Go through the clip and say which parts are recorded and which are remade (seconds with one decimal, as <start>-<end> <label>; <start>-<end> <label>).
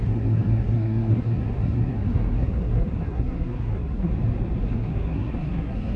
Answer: 0.0-4.1 remade; 4.1-4.6 recorded; 4.6-6.0 remade